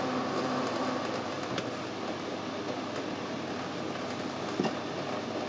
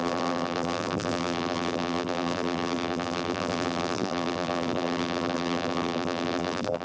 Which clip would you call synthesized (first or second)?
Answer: second